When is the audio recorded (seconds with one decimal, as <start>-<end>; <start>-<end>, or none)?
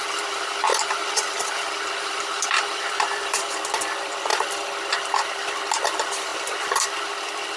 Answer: 4.3-4.9